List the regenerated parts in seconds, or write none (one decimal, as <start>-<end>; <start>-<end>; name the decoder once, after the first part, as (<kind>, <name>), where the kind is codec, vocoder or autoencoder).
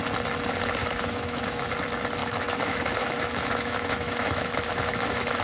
0.8-1.7 (autoencoder, DAC-VAE); 2.2-5.4